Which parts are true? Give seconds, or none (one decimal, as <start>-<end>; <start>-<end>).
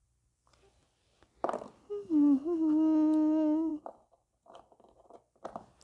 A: 0.0-5.8